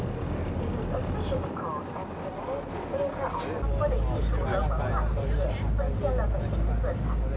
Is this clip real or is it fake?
real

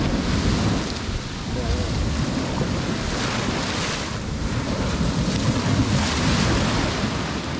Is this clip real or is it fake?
real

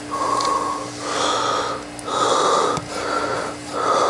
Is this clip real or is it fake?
real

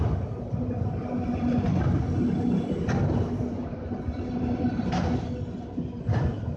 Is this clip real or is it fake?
real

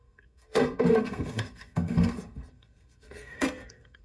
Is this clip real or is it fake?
fake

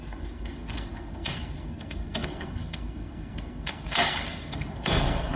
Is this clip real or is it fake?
fake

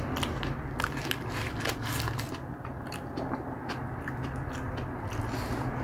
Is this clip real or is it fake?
real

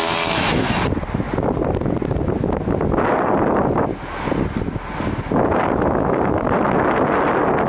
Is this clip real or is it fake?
real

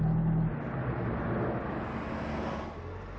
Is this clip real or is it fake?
real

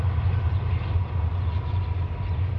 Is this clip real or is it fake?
real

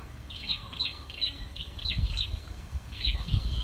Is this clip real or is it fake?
fake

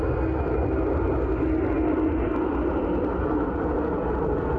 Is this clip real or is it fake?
real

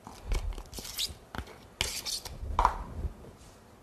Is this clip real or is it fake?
real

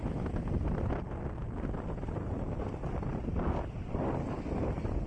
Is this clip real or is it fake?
real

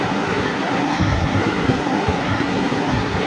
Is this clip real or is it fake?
fake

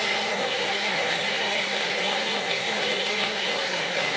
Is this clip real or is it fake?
fake